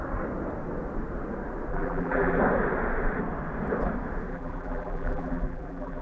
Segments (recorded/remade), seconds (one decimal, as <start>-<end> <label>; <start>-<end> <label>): 0.0-1.7 recorded; 1.7-2.4 remade; 2.4-4.3 recorded; 4.3-6.0 remade